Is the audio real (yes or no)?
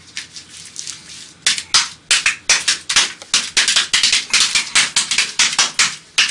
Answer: yes